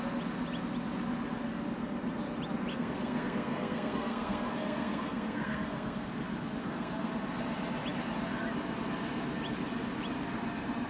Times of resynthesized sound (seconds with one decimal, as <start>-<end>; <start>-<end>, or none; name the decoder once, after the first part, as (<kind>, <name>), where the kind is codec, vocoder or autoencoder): 2.7-6.1 (codec, SNAC); 6.6-7.1